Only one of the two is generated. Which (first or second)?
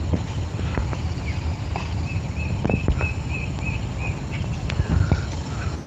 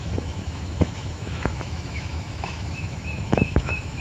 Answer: second